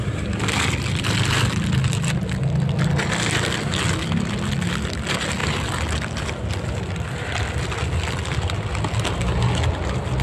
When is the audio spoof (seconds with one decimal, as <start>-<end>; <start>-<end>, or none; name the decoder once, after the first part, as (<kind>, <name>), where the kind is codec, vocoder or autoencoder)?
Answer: none

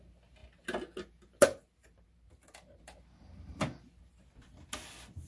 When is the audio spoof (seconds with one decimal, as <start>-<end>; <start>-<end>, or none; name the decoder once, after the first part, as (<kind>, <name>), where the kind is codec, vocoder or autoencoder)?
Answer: 1.5-2.8 (vocoder, BigVGAN v2)

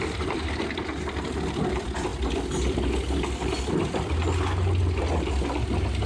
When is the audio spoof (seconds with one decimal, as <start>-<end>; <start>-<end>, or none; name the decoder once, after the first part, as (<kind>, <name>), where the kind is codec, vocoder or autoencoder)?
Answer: 0.0-2.1 (vocoder, BigVGAN v2)

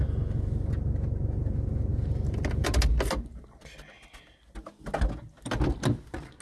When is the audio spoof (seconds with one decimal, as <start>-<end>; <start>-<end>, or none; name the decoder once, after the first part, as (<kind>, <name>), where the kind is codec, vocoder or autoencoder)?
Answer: 1.9-2.5 (vocoder, BigVGAN v2)